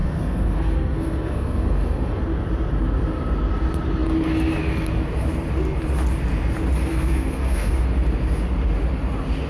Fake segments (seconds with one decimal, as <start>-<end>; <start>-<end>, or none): 0.0-2.2; 6.9-7.7